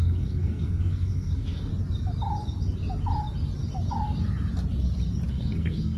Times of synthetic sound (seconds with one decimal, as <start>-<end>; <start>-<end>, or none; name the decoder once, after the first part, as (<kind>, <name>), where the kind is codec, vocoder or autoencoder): 0.0-1.7 (codec, SNAC); 5.3-6.0